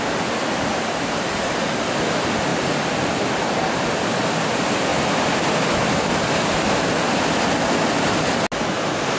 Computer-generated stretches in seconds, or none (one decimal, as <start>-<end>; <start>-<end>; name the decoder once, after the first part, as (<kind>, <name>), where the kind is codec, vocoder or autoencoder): 0.7-1.7 (vocoder, BigVGAN v2); 4.9-5.7